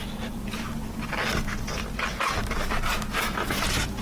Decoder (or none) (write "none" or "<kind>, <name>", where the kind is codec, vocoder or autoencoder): none